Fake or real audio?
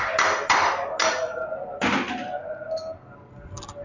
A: real